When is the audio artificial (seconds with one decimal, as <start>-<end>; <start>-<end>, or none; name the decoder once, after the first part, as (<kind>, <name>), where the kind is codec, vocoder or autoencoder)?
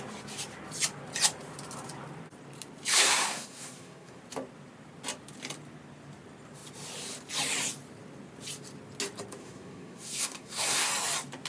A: 2.9-4.2 (codec, SNAC); 9.4-10.9